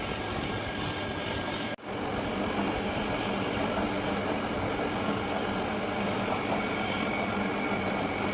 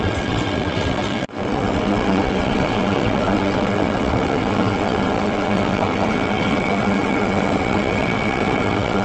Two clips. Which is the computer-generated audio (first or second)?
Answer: second